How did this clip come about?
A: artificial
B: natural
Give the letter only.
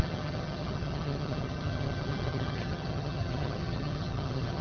A